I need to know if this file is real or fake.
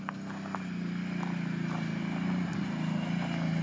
real